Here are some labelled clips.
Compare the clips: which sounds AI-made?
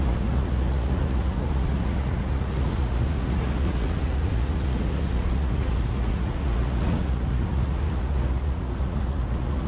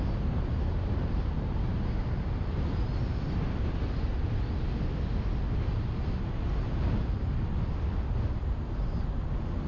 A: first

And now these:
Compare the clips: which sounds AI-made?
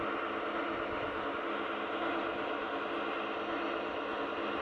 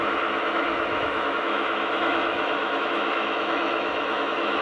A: second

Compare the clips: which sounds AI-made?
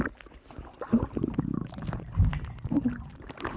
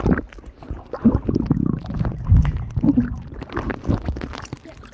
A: second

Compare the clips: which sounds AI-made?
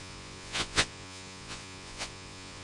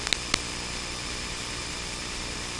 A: first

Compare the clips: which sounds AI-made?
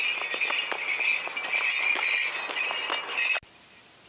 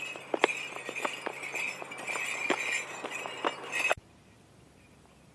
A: second